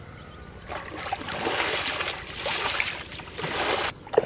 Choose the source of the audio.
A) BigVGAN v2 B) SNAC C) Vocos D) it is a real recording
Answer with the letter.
D